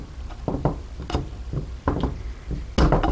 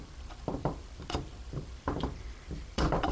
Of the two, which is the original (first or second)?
first